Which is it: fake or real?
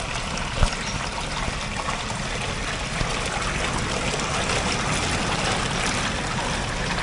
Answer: real